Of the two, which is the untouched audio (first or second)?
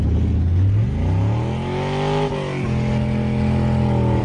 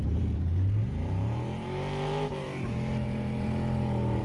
first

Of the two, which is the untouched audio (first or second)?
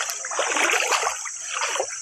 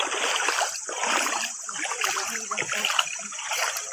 first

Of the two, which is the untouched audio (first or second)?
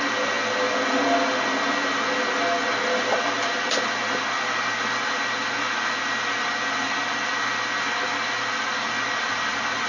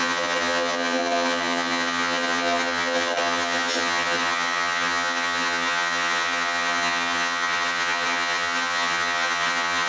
first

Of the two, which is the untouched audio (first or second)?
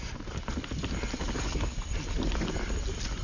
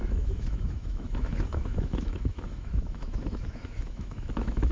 first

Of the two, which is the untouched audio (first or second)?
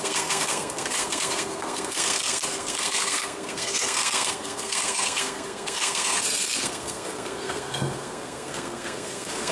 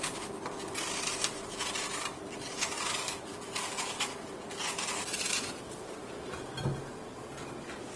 second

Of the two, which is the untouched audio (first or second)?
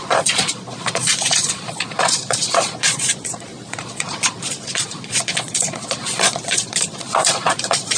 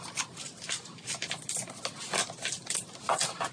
second